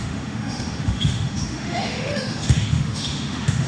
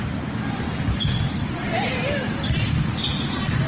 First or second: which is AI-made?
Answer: first